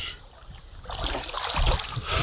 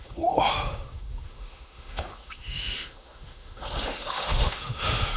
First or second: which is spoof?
second